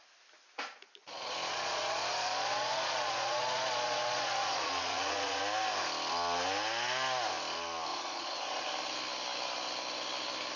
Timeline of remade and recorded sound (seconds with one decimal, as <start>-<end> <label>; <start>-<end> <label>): 0.0-1.0 recorded; 1.0-5.4 remade; 5.4-7.9 recorded; 7.9-8.7 remade; 8.7-10.6 recorded